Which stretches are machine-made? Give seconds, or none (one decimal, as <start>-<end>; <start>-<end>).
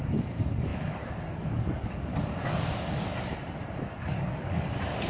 0.0-5.1